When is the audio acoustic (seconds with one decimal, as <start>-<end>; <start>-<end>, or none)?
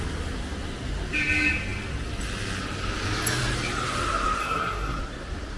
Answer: 0.0-4.4; 5.0-5.6